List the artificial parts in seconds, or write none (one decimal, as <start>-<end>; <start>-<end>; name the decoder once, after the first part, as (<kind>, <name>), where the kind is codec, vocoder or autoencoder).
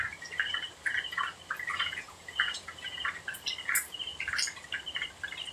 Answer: 1.7-3.0 (vocoder, Vocos)